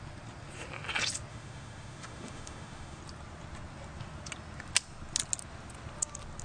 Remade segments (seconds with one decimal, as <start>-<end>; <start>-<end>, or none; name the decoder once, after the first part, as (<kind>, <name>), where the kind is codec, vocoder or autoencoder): 1.3-3.0 (autoencoder, DAC-VAE)